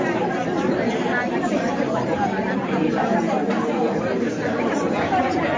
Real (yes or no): no